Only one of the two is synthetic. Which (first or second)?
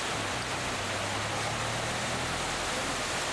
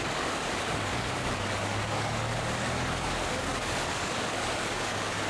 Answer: second